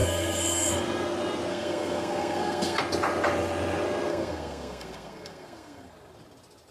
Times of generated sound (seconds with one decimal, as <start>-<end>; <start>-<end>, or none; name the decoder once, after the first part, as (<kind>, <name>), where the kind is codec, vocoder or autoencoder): 0.0-0.7 (codec, SNAC); 1.5-2.8; 4.1-5.9